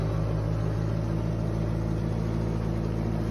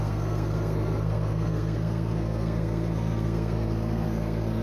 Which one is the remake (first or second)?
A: second